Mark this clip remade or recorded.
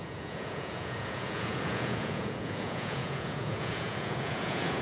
remade